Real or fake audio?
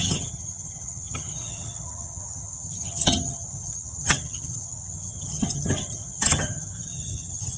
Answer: fake